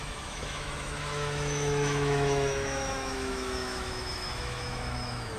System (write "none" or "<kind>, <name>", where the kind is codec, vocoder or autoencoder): autoencoder, DAC-VAE